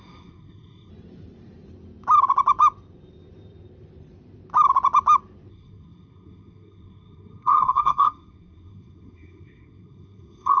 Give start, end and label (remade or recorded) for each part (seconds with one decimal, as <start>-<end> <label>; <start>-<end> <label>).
0.0-0.9 remade; 0.9-5.5 recorded; 5.5-10.6 remade